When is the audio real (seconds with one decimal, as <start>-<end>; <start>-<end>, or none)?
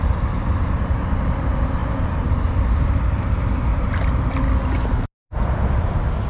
0.0-6.3